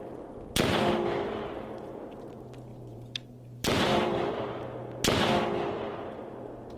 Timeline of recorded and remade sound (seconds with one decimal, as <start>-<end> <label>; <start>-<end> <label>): 0.0-2.7 recorded; 2.7-4.3 remade; 4.3-6.8 recorded